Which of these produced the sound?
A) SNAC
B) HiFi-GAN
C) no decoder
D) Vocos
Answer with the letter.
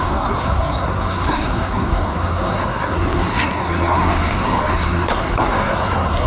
A